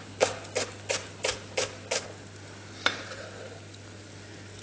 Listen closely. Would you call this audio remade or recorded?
recorded